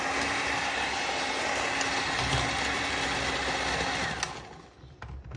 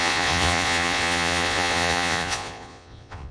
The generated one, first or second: second